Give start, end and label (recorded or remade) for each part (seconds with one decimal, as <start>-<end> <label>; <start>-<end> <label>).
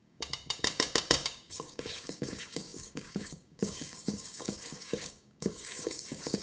0.0-6.4 remade